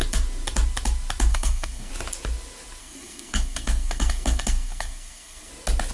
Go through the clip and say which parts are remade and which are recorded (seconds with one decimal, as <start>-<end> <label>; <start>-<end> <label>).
0.0-1.3 recorded; 1.3-1.9 remade; 1.9-2.8 recorded; 2.8-5.5 remade; 5.5-5.9 recorded

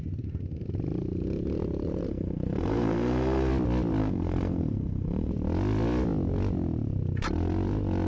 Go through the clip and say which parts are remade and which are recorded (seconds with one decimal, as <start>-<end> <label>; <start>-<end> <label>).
0.0-2.1 recorded; 2.1-3.5 remade; 3.5-4.0 recorded; 4.0-5.3 remade; 5.3-8.1 recorded

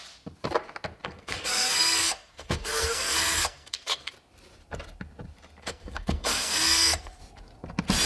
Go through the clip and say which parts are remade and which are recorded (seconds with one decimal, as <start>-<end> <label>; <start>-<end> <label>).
0.0-1.0 recorded; 1.0-4.1 remade; 4.1-5.6 recorded; 5.6-7.2 remade; 7.2-8.1 recorded

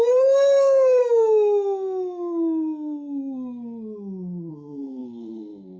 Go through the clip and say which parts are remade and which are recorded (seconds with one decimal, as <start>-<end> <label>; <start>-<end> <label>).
0.0-1.0 remade; 1.0-4.5 recorded; 4.5-5.8 remade

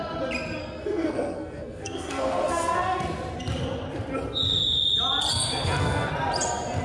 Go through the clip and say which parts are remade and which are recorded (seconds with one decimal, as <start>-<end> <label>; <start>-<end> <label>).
0.0-0.6 recorded; 0.6-3.0 remade; 3.0-5.3 recorded; 5.3-6.1 remade; 6.1-6.8 recorded